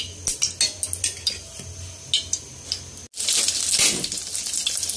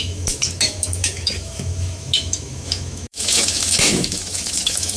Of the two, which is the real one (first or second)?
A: first